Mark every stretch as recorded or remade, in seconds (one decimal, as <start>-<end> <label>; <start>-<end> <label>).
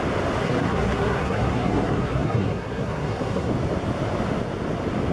0.0-0.4 recorded; 0.4-3.5 remade; 3.5-5.1 recorded